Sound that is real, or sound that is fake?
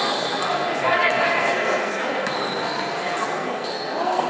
fake